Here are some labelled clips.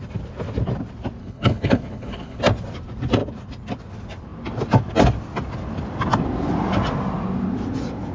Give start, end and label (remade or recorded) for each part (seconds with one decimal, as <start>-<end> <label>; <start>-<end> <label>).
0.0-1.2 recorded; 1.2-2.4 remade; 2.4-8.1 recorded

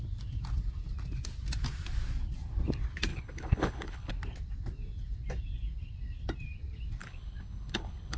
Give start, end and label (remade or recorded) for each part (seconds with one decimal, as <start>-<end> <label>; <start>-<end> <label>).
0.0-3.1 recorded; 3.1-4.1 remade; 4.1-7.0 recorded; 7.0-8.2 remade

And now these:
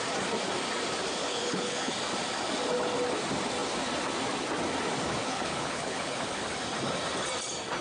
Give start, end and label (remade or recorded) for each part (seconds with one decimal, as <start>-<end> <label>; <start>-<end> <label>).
0.0-1.2 recorded; 1.2-1.9 remade; 1.9-5.2 recorded; 5.2-6.4 remade; 6.4-7.8 recorded

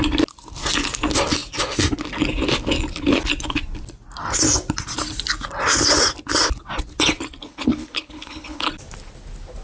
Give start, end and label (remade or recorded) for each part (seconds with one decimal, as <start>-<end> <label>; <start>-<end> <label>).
0.0-7.4 recorded; 7.4-8.7 remade; 8.7-9.6 recorded

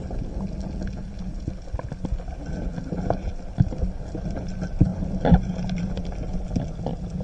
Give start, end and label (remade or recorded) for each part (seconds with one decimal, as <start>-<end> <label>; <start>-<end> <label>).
0.0-7.2 recorded

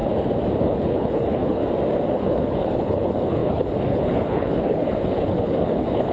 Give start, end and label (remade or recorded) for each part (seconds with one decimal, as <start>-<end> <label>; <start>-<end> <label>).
0.0-0.6 recorded; 0.6-1.6 remade; 1.6-2.1 recorded; 2.1-6.1 remade

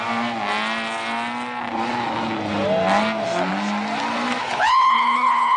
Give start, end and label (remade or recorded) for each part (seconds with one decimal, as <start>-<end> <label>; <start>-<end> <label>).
0.0-4.4 recorded; 4.4-5.6 remade